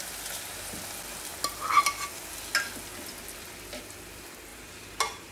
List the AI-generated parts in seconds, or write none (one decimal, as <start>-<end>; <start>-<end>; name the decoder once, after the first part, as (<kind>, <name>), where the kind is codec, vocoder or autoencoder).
4.5-5.3 (vocoder, BigVGAN v2)